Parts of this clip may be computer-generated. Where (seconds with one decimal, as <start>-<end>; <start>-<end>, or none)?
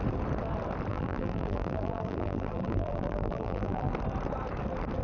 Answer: 0.9-3.9